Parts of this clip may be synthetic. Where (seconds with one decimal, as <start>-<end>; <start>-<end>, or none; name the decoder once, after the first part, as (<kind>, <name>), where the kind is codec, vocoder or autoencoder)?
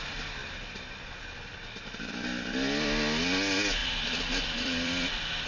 3.8-5.5 (vocoder, BigVGAN v2)